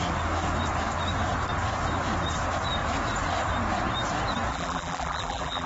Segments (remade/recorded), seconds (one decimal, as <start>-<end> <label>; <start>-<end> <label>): 0.0-4.5 recorded; 4.5-5.7 remade